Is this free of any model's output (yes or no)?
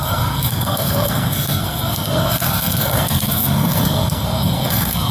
no